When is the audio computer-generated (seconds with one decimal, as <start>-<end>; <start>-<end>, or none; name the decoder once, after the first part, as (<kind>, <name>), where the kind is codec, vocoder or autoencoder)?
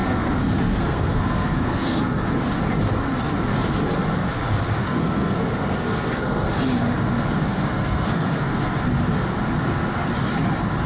0.0-2.4 (codec, SNAC); 4.8-6.5; 7.5-8.8